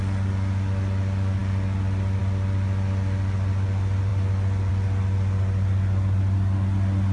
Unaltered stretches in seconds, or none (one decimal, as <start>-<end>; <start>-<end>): 0.0-7.1